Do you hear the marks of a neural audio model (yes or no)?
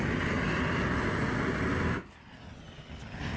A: no